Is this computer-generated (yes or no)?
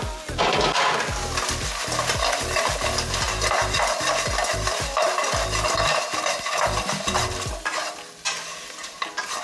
no